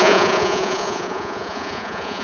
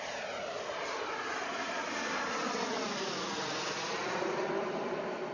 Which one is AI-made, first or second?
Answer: first